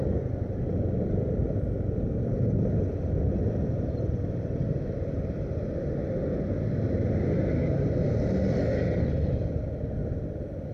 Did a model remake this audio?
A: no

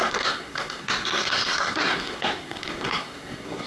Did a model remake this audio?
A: yes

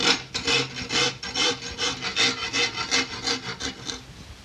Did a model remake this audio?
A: no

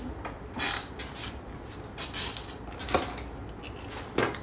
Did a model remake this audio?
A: no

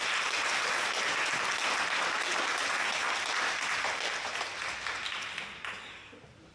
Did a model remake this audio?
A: no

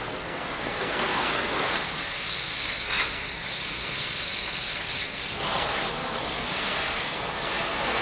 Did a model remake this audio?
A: yes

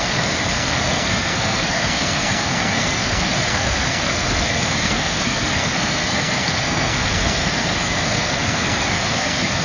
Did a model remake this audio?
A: yes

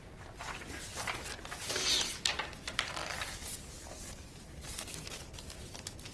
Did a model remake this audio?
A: no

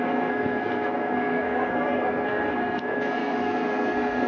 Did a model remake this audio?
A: yes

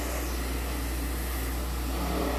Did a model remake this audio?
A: no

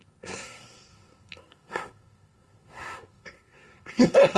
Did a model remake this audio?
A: yes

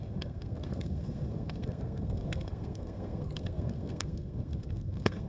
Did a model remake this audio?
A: yes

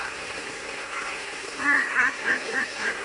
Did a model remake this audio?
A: yes